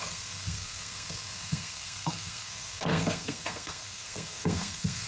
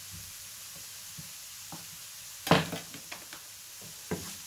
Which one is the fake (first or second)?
first